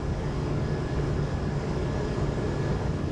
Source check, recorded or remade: remade